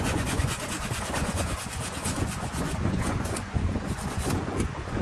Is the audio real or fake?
fake